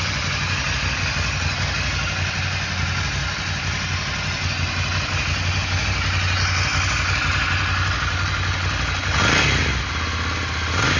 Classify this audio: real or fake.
real